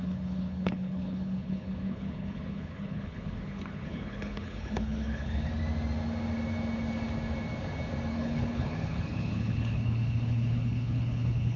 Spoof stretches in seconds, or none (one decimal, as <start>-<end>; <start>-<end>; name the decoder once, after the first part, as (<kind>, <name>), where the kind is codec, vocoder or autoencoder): 0.0-5.5 (codec, HILCodec); 8.1-11.6